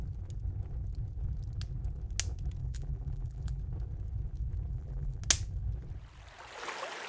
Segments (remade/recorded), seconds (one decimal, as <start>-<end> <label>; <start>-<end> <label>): 0.0-2.6 recorded; 2.6-3.6 remade; 3.6-4.7 recorded; 4.7-5.2 remade; 5.2-7.1 recorded